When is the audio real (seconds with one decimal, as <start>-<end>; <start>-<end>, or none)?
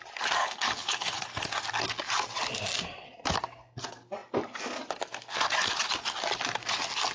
0.0-0.4; 1.4-7.1